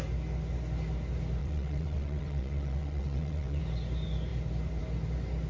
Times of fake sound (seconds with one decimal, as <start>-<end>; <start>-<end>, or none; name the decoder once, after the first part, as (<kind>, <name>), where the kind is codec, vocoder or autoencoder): 1.4-3.6 (vocoder, WaveNeXt)